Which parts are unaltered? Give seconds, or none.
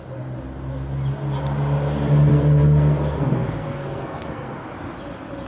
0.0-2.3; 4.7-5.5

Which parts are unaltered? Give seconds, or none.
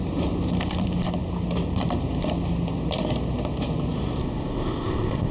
0.0-4.2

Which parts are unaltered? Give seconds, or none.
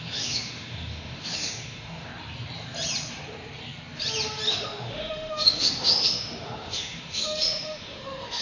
2.1-4.5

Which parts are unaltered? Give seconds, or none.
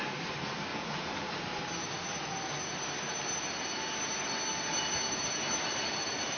0.0-0.7; 1.3-6.4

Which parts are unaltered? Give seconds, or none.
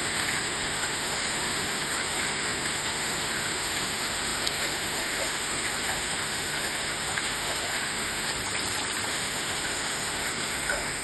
8.3-9.1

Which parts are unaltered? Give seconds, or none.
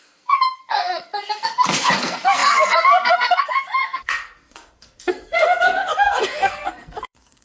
none